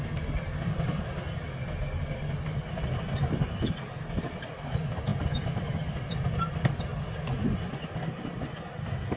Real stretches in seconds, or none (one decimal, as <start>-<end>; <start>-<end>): 0.0-9.2